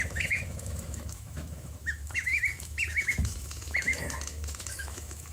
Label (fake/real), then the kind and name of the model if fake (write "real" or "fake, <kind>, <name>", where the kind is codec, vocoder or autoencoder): fake, autoencoder, DAC-VAE